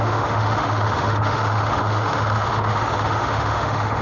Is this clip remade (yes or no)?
yes